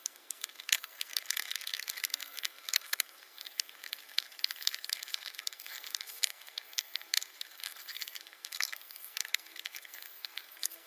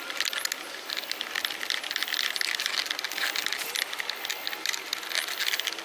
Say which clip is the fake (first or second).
first